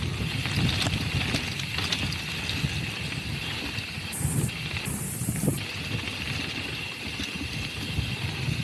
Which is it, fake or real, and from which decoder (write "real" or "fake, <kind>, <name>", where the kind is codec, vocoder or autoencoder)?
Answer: real